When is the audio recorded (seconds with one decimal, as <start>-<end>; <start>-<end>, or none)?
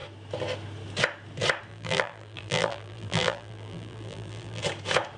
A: 0.0-1.7; 4.6-5.2